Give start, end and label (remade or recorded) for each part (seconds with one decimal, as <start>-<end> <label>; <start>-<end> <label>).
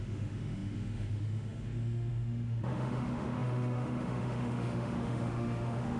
0.0-6.0 remade